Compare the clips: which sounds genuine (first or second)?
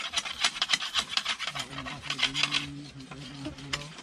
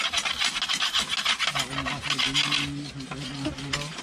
second